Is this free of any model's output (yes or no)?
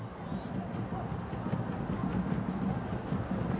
yes